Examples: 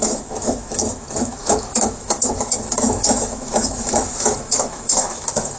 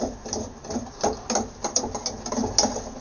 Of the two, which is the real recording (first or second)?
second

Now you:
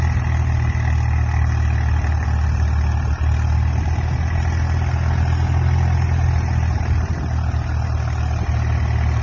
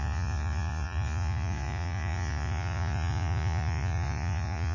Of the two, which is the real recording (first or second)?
first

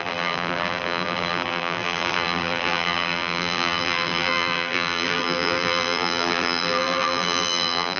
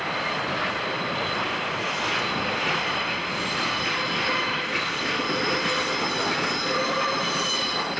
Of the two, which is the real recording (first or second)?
second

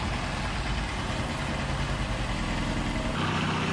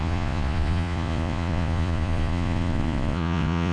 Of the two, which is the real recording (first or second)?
first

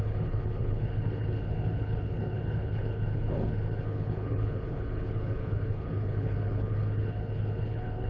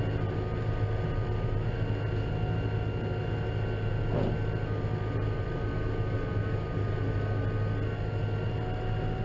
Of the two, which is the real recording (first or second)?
second